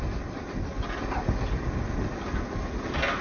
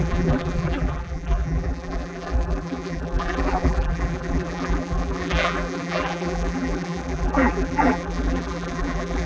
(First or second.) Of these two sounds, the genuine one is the first